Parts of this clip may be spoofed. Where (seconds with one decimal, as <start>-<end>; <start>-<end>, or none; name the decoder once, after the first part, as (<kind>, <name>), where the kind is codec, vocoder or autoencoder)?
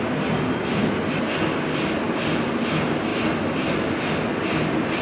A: none